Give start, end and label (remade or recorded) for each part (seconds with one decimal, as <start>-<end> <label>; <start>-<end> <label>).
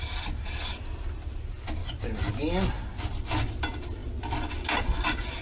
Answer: 0.0-1.8 recorded; 1.8-2.3 remade; 2.3-5.4 recorded